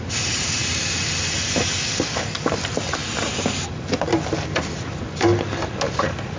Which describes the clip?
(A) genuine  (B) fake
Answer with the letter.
A